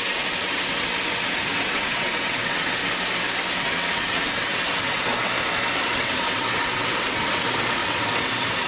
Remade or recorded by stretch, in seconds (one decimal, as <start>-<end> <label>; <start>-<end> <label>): 0.0-2.8 remade; 2.8-3.6 recorded; 3.6-5.1 remade; 5.1-5.8 recorded; 5.8-8.7 remade